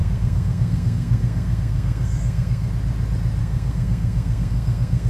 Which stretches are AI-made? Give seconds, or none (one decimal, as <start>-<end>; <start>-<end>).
0.0-2.7; 3.4-5.1